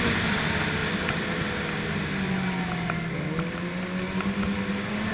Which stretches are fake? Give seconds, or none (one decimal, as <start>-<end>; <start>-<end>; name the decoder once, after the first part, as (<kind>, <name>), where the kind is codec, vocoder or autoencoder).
none